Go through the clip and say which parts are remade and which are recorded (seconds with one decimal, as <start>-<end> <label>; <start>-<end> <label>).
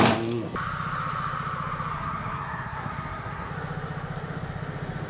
0.0-1.9 recorded; 1.9-3.5 remade; 3.5-5.1 recorded